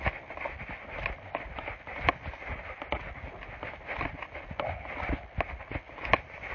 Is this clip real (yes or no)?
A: yes